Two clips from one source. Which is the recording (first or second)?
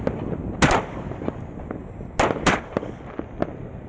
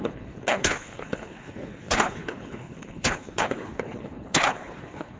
first